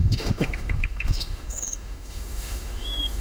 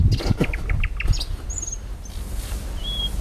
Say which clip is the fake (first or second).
first